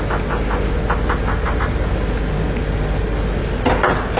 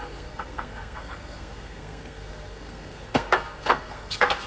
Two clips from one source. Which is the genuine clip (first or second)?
first